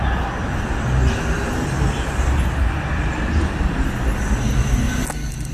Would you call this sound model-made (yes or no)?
no